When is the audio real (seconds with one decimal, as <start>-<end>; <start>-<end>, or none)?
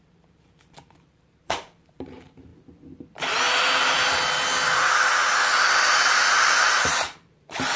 2.5-6.6